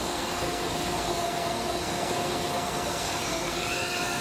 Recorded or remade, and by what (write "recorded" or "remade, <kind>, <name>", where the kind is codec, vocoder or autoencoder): remade, codec, SNAC